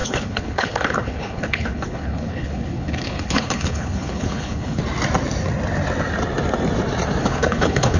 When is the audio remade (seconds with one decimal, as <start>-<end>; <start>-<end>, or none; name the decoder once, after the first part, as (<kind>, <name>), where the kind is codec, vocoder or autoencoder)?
0.0-4.8 (codec, HILCodec); 7.2-8.0